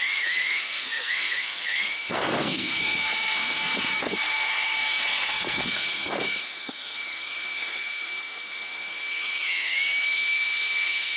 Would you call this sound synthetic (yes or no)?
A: yes